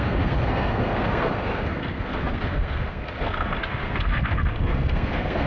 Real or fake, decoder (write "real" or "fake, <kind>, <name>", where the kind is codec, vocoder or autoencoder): fake, codec, SNAC